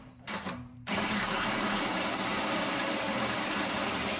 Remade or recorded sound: remade